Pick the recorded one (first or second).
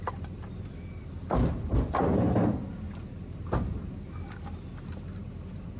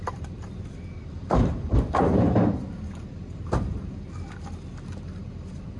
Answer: first